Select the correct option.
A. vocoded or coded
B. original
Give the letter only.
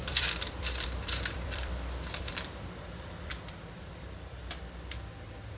A